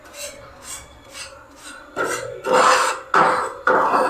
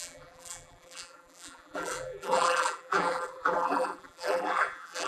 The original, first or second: first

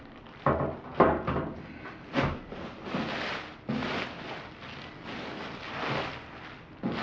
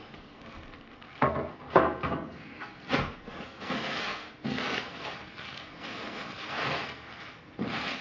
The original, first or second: first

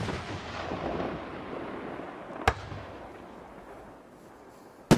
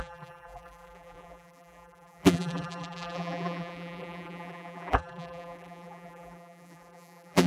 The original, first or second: first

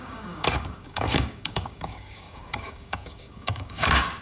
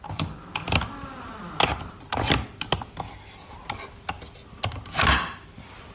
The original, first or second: second